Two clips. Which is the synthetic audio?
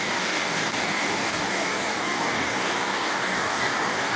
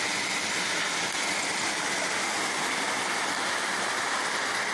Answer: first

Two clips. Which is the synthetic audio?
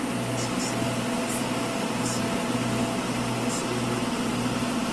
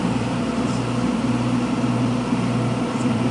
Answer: second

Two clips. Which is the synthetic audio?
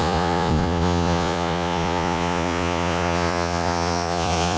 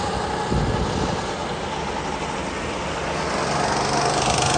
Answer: first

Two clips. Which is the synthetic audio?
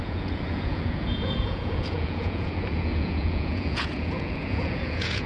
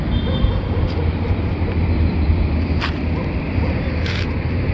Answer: first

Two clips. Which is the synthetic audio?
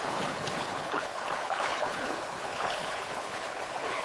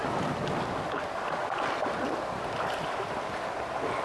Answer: first